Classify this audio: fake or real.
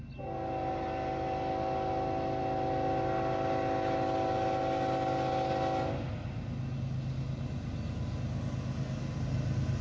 real